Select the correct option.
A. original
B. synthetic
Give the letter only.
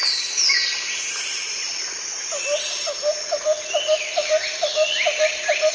A